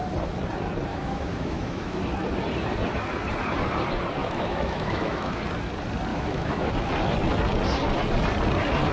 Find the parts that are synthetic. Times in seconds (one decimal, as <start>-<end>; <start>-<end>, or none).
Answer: 0.9-2.0; 4.2-5.4; 6.1-6.7